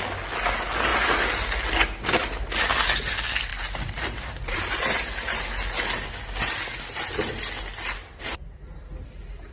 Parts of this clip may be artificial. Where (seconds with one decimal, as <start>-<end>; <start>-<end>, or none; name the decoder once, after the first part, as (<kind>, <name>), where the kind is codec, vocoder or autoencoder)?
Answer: 3.5-4.8 (vocoder, BigVGAN v2)